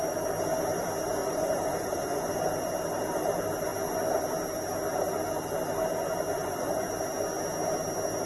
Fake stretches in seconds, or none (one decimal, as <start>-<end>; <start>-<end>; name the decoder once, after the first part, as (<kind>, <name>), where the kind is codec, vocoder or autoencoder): 1.2-2.3 (vocoder, Vocos); 6.3-6.9